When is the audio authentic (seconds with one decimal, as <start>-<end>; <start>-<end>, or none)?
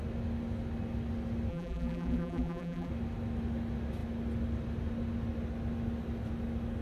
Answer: 0.0-1.5; 2.9-6.8